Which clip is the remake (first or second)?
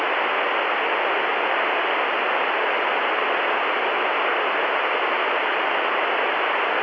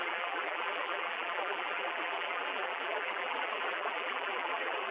second